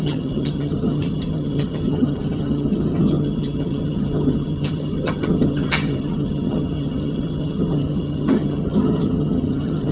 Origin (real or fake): fake